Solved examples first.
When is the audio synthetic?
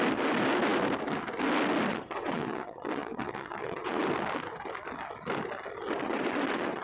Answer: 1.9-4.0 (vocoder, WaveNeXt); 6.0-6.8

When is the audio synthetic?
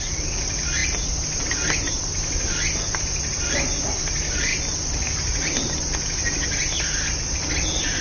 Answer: none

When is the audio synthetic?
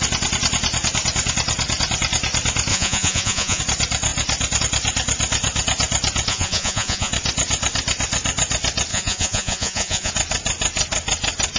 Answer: 2.7-3.6 (vocoder, Vocos); 6.3-7.1; 8.9-10.1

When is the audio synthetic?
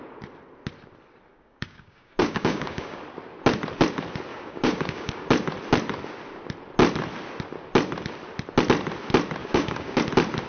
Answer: 1.3-3.0 (codec, DAC); 4.3-5.3; 9.4-10.0